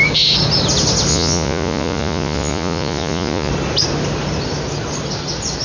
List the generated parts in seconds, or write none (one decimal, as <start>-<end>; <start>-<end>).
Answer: 1.1-3.5